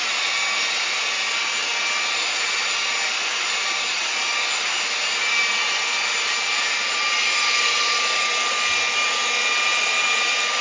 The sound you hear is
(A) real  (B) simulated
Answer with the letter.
A